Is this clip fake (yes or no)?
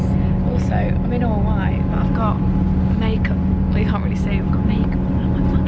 no